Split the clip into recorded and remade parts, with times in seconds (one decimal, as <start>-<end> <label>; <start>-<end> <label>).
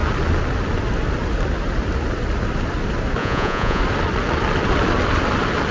0.0-3.2 recorded; 3.2-3.8 remade; 3.8-5.7 recorded